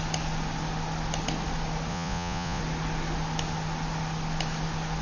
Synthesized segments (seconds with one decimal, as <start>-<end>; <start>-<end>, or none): 1.9-2.6